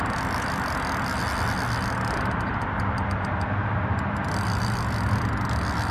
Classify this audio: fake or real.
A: real